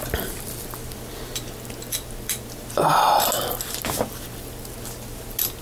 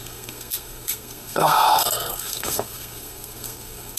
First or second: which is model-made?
second